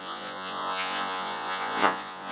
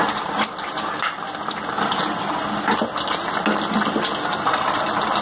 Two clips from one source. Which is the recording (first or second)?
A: second